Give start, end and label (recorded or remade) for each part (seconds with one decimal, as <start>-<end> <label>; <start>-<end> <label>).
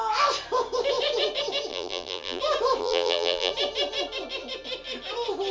0.0-1.7 recorded; 1.7-2.4 remade; 2.4-2.8 recorded; 2.8-3.5 remade; 3.5-5.5 recorded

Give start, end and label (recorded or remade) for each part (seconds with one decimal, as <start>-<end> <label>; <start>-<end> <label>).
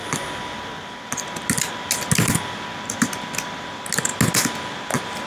0.0-5.3 recorded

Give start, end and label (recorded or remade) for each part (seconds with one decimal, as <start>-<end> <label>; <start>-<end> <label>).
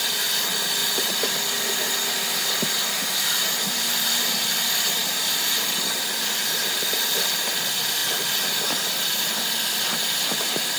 0.0-0.8 recorded; 0.8-4.3 remade; 4.3-5.0 recorded; 5.0-7.5 remade; 7.5-10.8 recorded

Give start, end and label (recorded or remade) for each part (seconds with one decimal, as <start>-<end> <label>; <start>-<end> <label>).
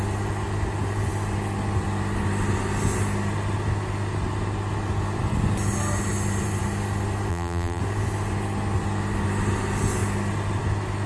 0.0-7.3 recorded; 7.3-7.8 remade; 7.8-11.1 recorded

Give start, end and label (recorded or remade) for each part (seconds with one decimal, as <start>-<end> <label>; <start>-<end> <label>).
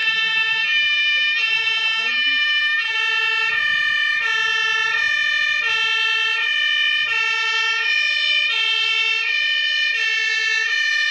0.0-3.0 remade; 3.0-11.1 recorded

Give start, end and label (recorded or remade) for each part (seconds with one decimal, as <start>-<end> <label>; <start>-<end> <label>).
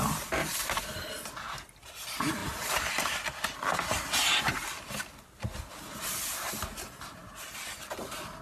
0.0-0.5 recorded; 0.5-1.1 remade; 1.1-2.4 recorded; 2.4-2.9 remade; 2.9-8.4 recorded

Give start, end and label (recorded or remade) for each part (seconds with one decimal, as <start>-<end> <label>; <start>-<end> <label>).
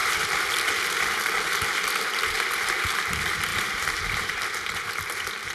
0.0-3.5 recorded; 3.5-4.4 remade; 4.4-5.5 recorded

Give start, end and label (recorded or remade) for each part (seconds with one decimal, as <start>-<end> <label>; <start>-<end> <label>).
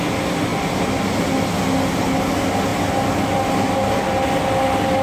0.0-0.5 recorded; 0.5-1.3 remade; 1.3-2.7 recorded; 2.7-3.9 remade; 3.9-5.0 recorded